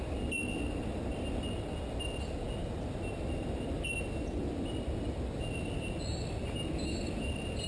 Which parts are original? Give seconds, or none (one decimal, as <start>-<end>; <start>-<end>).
0.0-7.7